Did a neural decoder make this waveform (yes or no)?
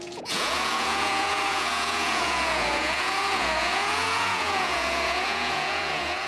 yes